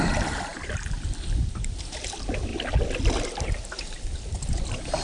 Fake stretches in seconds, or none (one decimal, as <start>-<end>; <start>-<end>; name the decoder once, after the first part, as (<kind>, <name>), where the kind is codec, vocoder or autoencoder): 0.5-2.0 (vocoder, BigVGAN v2); 2.5-3.5